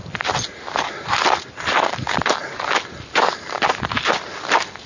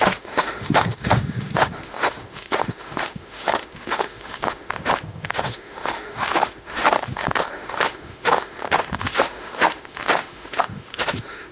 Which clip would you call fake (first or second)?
second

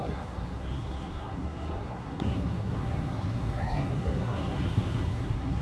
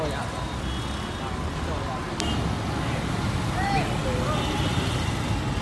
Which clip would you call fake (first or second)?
first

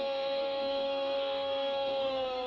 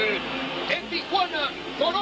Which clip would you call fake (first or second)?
first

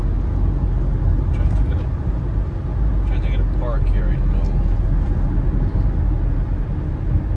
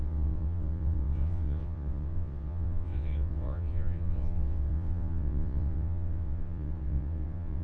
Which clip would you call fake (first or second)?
second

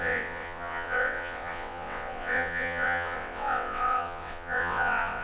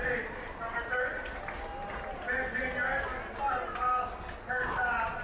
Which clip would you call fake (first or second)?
first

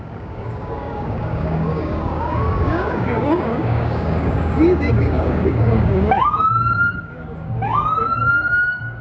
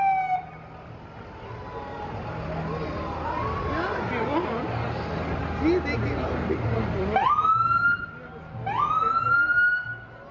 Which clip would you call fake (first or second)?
first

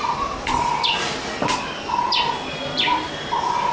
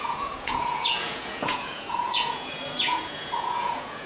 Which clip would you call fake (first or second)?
second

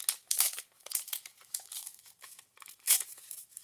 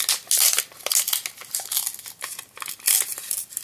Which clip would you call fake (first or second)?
first